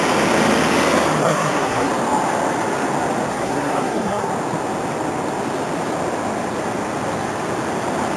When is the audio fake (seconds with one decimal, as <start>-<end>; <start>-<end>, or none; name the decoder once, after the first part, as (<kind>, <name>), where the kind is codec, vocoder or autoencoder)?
1.2-1.9 (codec, SNAC); 3.3-4.3